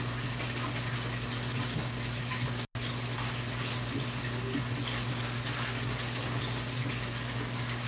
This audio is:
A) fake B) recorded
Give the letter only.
B